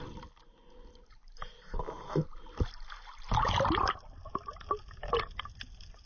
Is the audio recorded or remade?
recorded